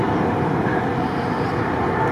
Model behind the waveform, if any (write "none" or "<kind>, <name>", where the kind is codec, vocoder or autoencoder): none